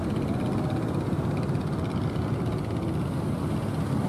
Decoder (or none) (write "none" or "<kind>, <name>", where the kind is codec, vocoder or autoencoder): none